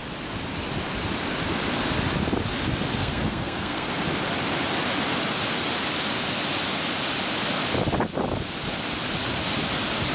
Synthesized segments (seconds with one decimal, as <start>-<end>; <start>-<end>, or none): 3.0-3.9

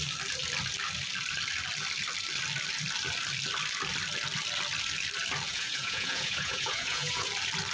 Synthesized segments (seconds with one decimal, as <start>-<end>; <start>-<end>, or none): 5.5-7.3

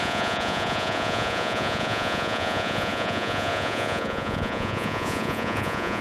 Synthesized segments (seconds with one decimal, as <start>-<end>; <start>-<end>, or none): 0.0-6.0

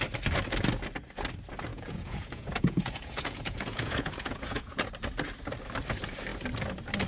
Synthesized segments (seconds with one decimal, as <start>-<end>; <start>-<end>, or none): 1.7-4.9

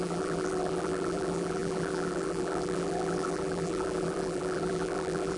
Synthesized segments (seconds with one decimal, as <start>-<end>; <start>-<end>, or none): 0.0-5.4